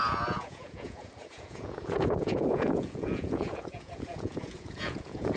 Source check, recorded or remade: remade